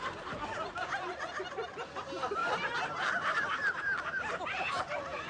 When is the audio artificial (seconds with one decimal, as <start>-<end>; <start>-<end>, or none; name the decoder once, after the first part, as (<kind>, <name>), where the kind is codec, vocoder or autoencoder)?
none